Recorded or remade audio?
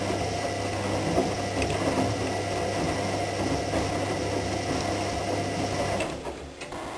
recorded